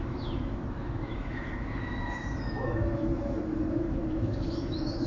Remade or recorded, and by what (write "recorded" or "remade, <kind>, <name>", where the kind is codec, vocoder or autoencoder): remade, autoencoder, DAC-VAE